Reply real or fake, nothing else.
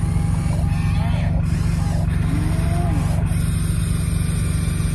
real